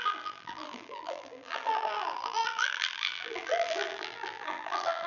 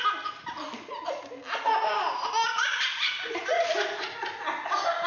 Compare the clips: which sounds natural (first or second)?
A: second